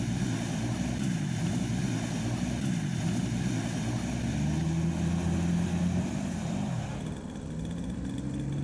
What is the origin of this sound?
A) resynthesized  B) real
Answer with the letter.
B